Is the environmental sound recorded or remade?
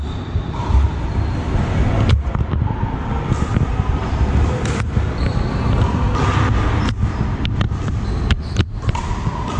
recorded